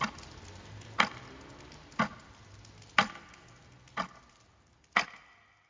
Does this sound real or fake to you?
real